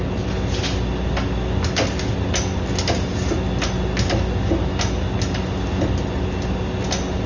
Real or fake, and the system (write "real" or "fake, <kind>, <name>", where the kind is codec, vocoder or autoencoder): real